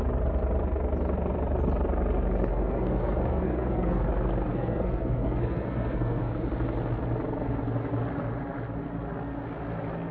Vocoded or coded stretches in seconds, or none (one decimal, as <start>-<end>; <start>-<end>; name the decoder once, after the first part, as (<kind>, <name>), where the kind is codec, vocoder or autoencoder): 2.5-4.1 (codec, SNAC); 4.5-6.3